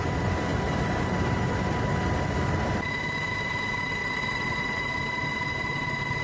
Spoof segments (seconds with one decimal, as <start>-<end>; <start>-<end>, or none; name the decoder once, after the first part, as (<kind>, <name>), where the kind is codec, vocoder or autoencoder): 4.0-4.8 (vocoder, WaveNeXt)